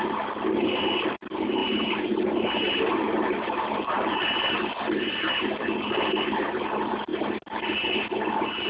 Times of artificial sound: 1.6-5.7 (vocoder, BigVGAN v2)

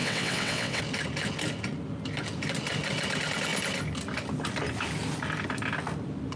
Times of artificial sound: 0.0-0.8 (vocoder, WaveNeXt)

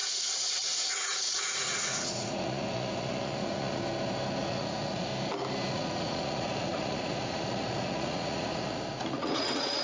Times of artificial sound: 0.0-3.8 (vocoder, Vocos); 4.4-5.1; 5.7-9.8

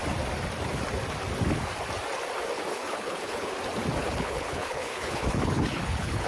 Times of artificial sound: 2.7-3.5 (codec, HILCodec); 4.0-6.3

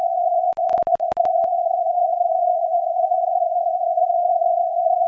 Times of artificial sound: 1.4-4.4 (vocoder, BigVGAN v2)

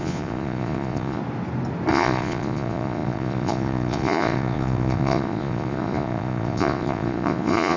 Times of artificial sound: 0.0-1.2 (vocoder, Vocos); 1.9-7.8

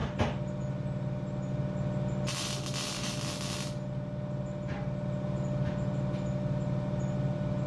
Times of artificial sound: none